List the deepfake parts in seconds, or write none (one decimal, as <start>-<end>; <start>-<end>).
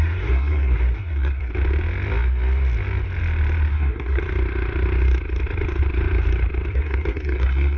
0.0-1.5; 3.7-4.2; 6.7-7.8